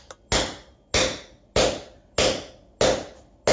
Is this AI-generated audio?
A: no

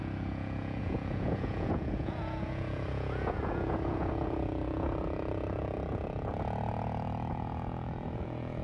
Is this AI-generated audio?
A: yes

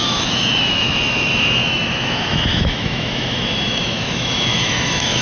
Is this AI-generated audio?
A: yes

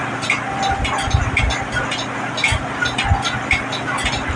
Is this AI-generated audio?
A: no